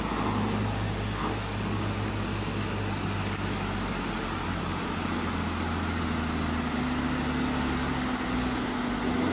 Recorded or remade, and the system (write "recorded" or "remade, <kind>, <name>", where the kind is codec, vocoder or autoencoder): recorded